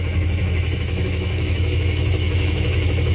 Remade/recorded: remade